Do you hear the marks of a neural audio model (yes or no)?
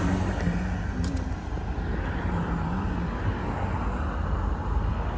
no